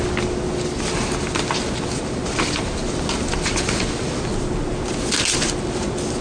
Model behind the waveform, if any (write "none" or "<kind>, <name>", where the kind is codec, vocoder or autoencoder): none